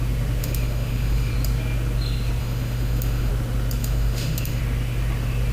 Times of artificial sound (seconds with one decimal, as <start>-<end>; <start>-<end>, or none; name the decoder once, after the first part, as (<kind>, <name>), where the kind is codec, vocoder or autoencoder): 0.4-1.3 (autoencoder, DAC-VAE); 2.4-3.3; 3.8-4.6